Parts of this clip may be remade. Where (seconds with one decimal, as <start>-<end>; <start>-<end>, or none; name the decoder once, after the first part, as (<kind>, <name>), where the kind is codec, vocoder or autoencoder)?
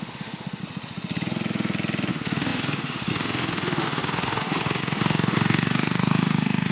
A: 0.0-0.6 (autoencoder, DAC-VAE); 2.1-6.7